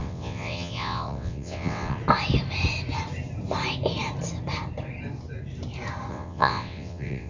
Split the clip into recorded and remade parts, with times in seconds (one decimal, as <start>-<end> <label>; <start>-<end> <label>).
0.0-2.0 remade; 2.0-6.1 recorded; 6.1-7.3 remade